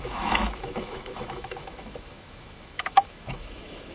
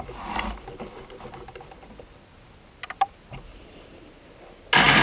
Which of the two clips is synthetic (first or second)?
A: first